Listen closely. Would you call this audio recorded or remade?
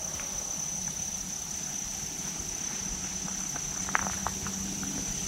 recorded